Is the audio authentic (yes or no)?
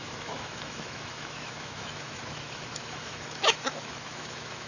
no